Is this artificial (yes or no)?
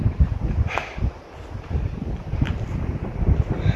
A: no